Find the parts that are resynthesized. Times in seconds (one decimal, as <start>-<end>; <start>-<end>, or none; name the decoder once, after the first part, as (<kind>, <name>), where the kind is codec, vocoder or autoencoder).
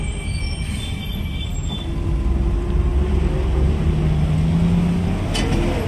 none